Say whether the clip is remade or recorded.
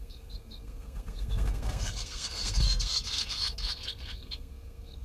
remade